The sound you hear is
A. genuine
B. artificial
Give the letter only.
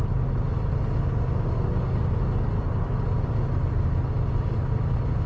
A